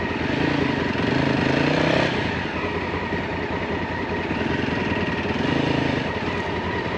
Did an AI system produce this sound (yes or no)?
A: no